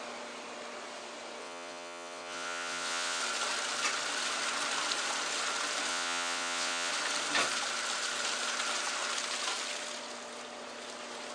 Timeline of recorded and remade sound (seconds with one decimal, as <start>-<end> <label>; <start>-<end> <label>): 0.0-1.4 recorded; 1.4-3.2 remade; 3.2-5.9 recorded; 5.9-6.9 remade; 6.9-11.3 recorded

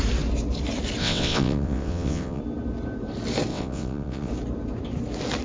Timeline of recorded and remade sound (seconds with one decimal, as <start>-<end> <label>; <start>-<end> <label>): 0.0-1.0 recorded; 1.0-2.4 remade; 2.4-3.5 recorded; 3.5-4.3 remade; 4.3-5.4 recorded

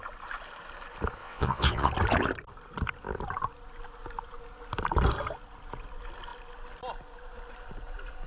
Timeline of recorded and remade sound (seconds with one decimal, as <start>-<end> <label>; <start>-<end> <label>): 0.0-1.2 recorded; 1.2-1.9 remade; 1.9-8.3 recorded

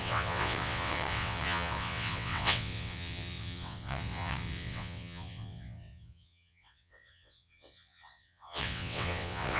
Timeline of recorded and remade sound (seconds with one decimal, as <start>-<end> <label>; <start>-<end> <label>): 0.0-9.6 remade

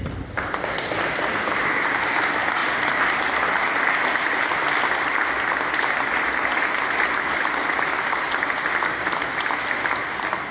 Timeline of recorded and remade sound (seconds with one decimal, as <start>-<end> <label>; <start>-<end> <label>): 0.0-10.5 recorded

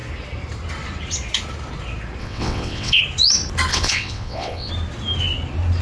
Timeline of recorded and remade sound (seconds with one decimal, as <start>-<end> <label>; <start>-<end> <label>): 0.0-2.2 recorded; 2.2-3.0 remade; 3.0-3.7 recorded; 3.7-4.7 remade; 4.7-5.8 recorded

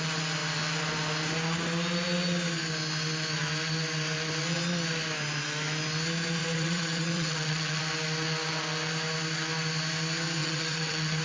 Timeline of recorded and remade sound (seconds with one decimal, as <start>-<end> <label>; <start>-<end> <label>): 0.0-6.4 recorded; 6.4-7.8 remade; 7.8-10.4 recorded; 10.4-11.2 remade

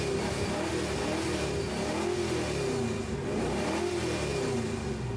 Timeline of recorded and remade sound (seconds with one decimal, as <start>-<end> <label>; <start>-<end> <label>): 0.0-5.2 recorded